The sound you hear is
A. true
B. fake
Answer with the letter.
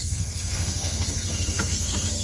B